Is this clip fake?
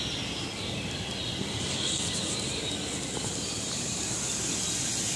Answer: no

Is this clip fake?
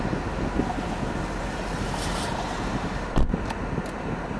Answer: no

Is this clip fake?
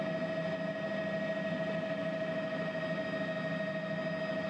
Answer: no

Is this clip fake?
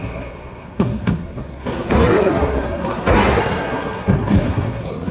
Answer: yes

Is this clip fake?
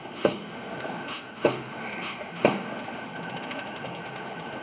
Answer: yes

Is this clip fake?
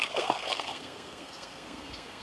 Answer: yes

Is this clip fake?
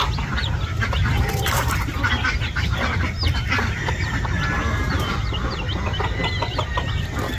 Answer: no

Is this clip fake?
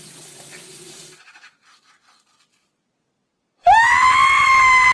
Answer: no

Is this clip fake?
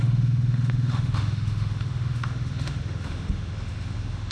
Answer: yes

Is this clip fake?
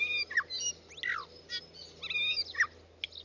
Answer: no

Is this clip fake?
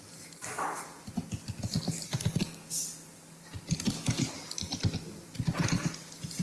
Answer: no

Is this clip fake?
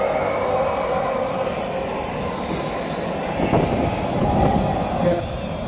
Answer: no